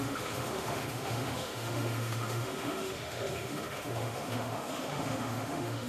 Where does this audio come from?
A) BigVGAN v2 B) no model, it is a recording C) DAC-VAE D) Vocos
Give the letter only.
C